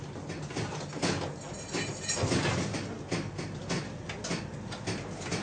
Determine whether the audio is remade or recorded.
recorded